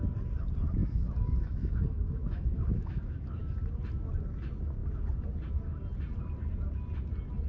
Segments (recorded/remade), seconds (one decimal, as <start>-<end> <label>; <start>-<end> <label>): 0.0-0.8 recorded; 0.8-3.4 remade; 3.4-7.5 recorded